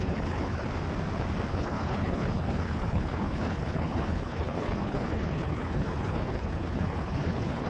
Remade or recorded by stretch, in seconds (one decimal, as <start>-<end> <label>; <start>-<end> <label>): 0.0-0.7 remade; 0.7-1.5 recorded; 1.5-7.7 remade